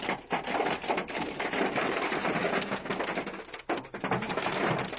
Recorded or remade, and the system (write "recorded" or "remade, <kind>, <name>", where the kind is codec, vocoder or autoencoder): recorded